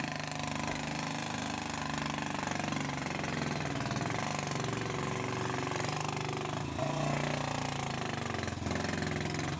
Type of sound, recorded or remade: recorded